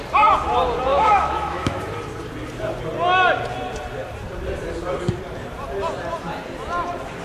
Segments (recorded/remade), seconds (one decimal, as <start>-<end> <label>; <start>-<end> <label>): 0.0-0.9 recorded; 0.9-1.8 remade; 1.8-7.2 recorded